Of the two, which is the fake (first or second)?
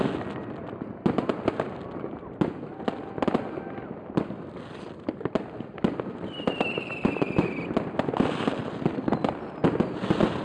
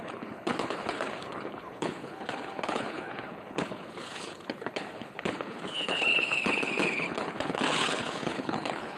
second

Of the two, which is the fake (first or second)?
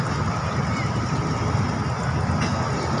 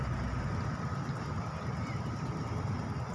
second